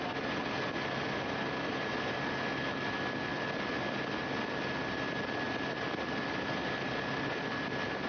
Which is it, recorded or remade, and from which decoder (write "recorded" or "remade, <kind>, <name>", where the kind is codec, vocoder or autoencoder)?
recorded